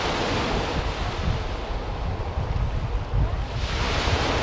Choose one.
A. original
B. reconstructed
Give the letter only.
A